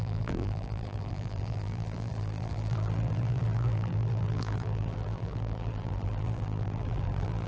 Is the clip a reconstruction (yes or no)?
yes